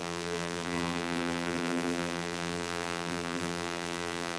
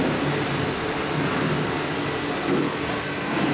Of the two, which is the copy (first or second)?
first